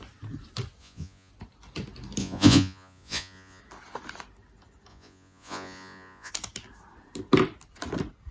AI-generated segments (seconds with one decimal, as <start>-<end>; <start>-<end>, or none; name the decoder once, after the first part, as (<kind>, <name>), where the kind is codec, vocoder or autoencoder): 0.8-1.3 (vocoder, Vocos); 2.2-3.6; 4.9-6.3